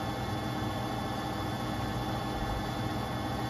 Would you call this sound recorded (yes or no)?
yes